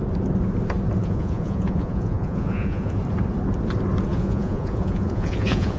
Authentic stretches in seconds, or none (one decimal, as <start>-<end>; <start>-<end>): 0.0-1.0; 3.0-4.1